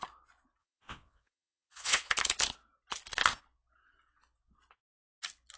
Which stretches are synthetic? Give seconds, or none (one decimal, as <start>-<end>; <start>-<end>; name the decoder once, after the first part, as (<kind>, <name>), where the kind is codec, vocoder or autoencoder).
0.6-2.1 (vocoder, WaveNeXt)